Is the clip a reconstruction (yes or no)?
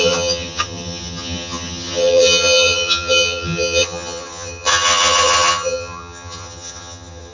yes